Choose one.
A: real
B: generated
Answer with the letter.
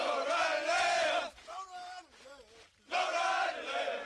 B